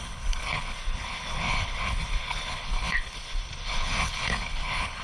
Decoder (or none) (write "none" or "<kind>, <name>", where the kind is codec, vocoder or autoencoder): codec, HILCodec